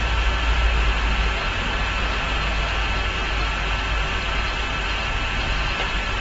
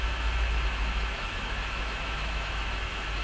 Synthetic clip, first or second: second